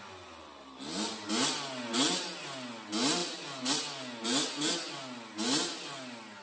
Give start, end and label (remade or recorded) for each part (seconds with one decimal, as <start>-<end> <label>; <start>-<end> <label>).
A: 0.0-6.4 recorded